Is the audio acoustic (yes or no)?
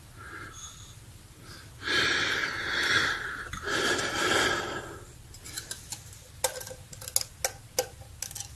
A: yes